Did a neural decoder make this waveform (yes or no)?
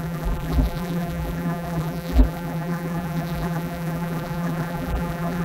yes